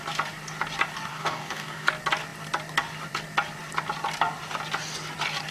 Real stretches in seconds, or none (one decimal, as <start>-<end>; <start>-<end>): 0.0-1.1; 1.9-5.5